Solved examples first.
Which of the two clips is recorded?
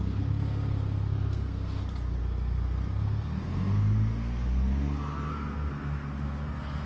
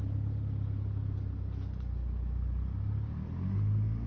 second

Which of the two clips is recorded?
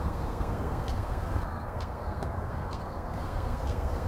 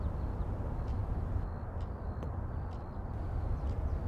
second